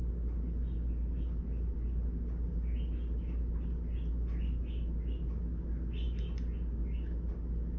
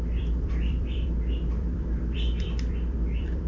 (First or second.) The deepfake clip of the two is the second